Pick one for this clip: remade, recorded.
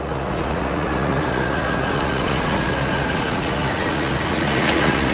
remade